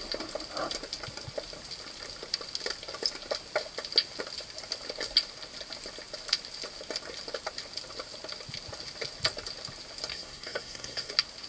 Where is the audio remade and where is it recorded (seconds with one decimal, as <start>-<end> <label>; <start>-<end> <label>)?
0.0-10.1 recorded; 10.1-11.1 remade; 11.1-11.5 recorded